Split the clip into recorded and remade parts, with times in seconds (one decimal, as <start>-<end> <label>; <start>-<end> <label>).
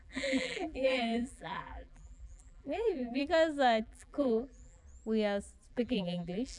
0.0-3.2 remade; 3.2-3.8 recorded; 3.8-4.8 remade; 4.8-5.7 recorded; 5.7-6.6 remade